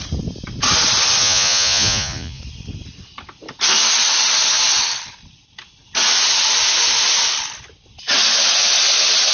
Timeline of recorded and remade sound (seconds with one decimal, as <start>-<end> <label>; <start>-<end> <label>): 0.0-1.2 recorded; 1.2-2.4 remade; 2.4-9.3 recorded